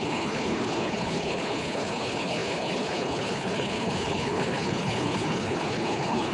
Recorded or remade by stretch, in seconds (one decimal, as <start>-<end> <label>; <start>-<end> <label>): 0.0-6.3 remade